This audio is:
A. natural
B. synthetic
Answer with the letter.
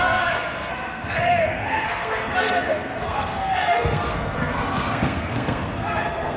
B